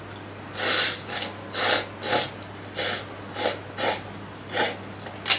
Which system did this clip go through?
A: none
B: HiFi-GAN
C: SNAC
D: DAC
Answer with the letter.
A